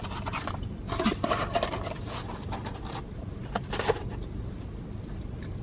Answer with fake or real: fake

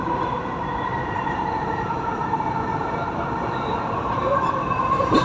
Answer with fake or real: fake